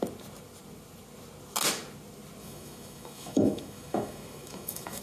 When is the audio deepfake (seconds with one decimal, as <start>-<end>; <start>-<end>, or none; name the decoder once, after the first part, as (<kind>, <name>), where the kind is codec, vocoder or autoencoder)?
2.4-5.0 (autoencoder, DAC-VAE)